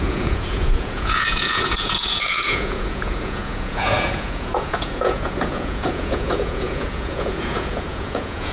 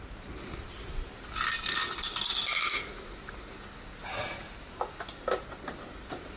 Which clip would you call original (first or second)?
second